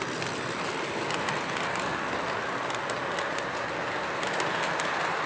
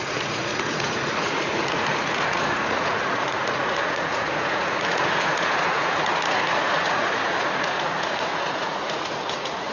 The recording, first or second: first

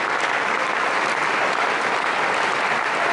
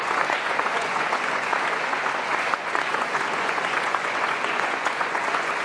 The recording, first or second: first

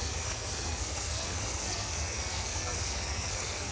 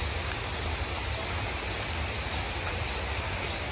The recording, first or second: second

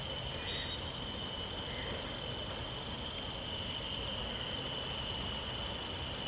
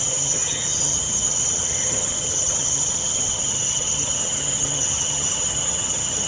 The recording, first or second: first